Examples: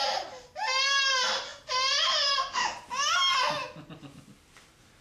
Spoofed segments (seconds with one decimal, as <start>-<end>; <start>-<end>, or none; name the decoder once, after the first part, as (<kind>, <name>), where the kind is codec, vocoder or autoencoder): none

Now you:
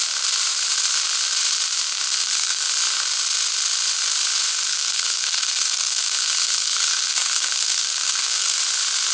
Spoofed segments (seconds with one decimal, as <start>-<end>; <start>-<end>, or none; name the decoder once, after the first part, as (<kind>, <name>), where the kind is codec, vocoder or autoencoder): 2.1-2.7 (codec, SNAC); 4.7-8.6

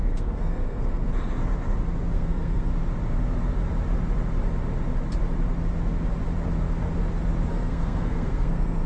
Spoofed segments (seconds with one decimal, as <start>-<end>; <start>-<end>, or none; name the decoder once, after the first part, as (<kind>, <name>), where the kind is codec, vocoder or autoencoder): 0.0-1.1 (codec, SNAC); 2.1-2.7; 7.5-8.9